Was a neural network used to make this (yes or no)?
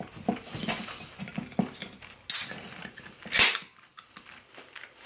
no